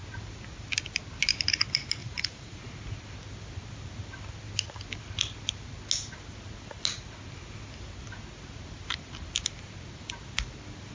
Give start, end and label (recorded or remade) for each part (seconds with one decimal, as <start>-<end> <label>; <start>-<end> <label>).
0.0-2.0 recorded; 2.0-2.6 remade; 2.6-10.9 recorded